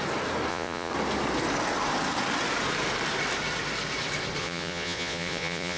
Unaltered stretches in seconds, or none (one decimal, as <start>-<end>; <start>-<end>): 0.0-0.5; 0.9-4.4